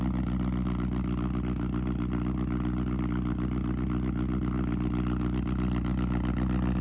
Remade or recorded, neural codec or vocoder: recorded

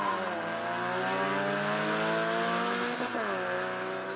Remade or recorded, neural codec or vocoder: recorded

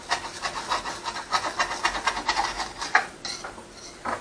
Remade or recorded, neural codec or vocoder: recorded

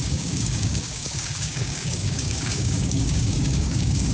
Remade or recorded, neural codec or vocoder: remade, codec, DAC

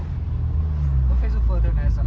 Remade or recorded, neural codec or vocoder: recorded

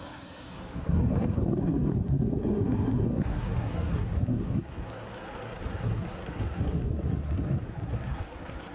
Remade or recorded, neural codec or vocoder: remade, codec, SNAC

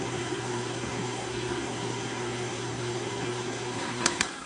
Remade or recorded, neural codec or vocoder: remade, codec, SNAC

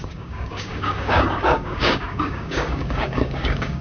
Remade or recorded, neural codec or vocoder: remade, codec, DAC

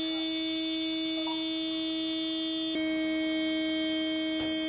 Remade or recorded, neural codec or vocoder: recorded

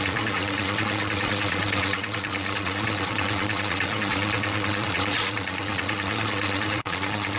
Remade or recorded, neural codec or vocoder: remade, vocoder, Vocos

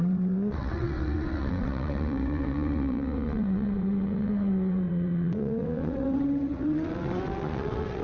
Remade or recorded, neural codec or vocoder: remade, vocoder, WaveNeXt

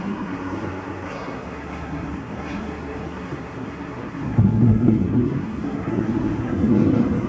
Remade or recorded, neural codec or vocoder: remade, codec, SNAC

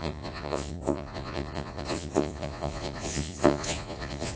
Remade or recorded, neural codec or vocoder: remade, vocoder, Vocos